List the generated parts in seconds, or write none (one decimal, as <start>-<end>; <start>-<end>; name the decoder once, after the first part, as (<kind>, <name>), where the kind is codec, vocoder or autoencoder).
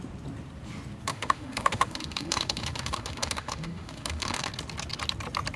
1.1-4.5 (autoencoder, DAC-VAE)